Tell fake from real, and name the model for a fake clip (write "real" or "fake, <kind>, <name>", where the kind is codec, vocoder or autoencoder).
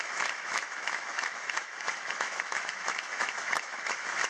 fake, autoencoder, DAC-VAE